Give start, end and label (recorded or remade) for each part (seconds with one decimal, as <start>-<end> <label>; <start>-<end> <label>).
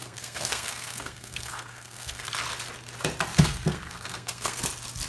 0.0-2.3 remade; 2.3-3.3 recorded; 3.3-4.6 remade; 4.6-5.1 recorded